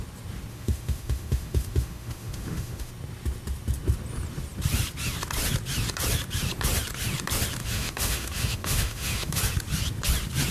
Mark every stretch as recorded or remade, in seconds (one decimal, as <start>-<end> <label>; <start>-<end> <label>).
0.0-0.5 recorded; 0.5-2.9 remade; 2.9-7.6 recorded; 7.6-9.4 remade; 9.4-10.5 recorded